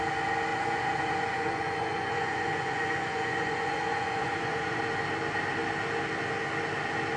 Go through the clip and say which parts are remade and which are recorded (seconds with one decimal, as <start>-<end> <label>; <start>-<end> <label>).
0.0-0.5 recorded; 0.5-4.8 remade; 4.8-7.2 recorded